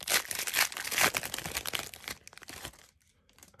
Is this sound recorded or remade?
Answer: recorded